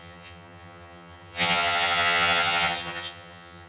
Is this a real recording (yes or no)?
no